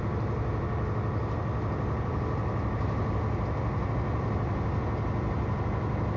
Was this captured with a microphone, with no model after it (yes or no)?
yes